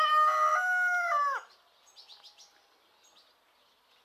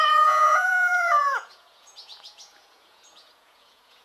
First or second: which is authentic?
first